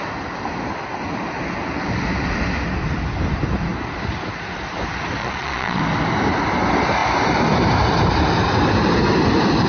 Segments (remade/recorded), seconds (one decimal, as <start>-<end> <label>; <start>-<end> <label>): 0.0-5.2 recorded; 5.2-5.8 remade; 5.8-9.7 recorded